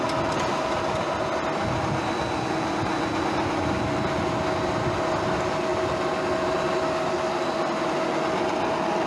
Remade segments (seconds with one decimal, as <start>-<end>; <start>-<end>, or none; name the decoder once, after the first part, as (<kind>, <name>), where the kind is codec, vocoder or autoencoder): none